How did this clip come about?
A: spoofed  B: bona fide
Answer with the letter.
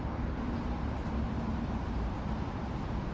A